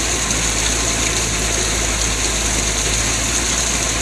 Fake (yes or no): no